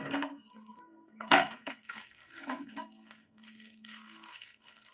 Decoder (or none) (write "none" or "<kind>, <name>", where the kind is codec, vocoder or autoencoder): codec, SNAC